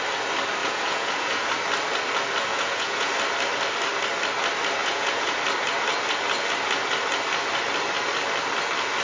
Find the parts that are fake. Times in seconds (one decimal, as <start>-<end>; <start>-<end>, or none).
0.6-1.5; 2.5-3.1; 4.8-5.3